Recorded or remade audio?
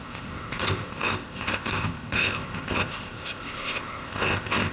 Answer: remade